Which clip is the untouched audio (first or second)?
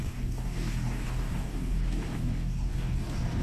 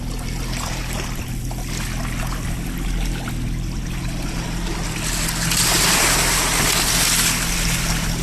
second